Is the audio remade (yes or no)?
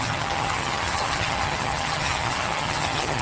yes